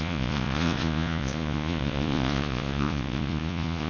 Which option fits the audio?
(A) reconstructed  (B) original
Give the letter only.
A